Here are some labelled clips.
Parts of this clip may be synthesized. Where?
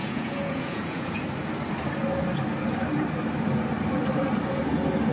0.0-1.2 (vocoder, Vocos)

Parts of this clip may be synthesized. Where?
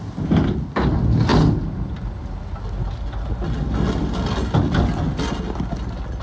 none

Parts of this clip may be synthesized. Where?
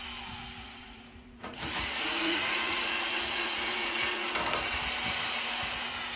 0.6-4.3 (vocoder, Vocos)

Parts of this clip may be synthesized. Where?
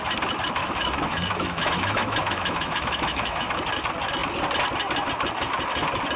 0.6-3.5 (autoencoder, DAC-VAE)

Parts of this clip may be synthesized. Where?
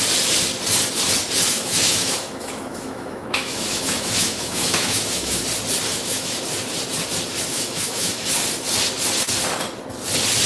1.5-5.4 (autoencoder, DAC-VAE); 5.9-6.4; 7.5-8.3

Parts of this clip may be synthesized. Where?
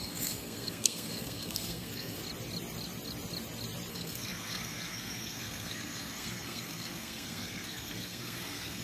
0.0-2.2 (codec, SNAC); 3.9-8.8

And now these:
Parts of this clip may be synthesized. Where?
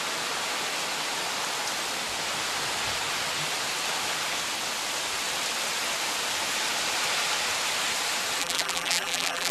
8.4-9.5 (vocoder, BigVGAN v2)